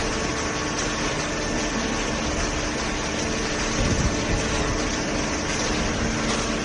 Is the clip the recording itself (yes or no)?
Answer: yes